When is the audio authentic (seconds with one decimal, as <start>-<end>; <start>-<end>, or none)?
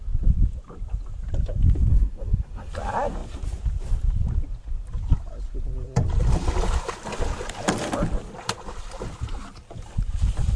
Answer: 0.0-1.9; 2.7-10.6